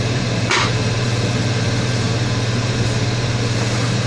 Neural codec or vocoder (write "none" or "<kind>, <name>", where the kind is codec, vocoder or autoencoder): vocoder, BigVGAN v2